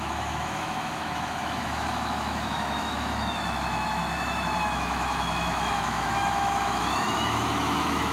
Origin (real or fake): fake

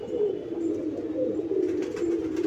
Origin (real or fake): real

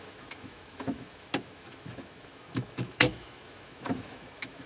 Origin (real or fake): fake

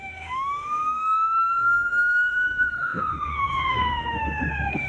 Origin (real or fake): fake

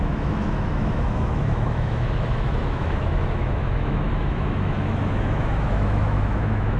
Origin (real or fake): fake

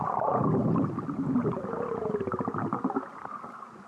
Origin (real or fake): real